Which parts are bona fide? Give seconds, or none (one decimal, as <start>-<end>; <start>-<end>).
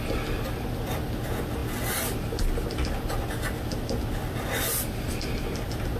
0.0-6.0